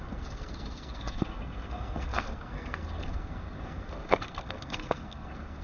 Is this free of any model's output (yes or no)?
no